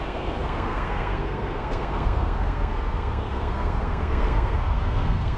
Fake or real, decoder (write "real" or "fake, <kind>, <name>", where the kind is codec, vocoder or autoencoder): fake, codec, SNAC